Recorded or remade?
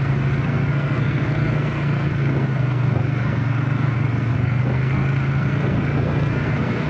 remade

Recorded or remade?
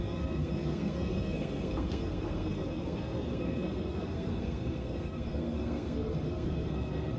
remade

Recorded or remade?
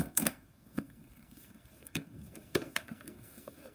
remade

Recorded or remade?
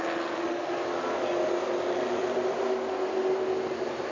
recorded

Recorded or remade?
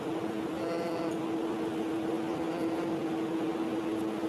recorded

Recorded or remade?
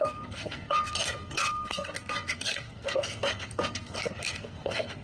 remade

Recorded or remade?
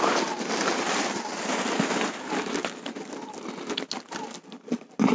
recorded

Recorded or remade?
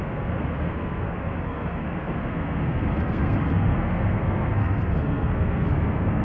remade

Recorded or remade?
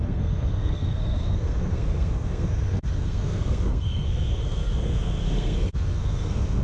remade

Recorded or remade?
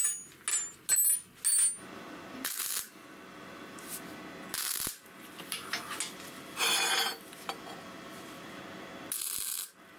recorded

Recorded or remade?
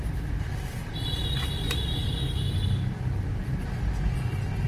recorded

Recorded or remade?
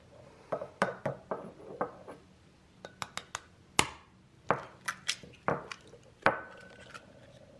recorded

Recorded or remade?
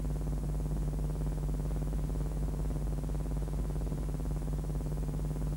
recorded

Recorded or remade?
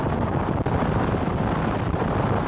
recorded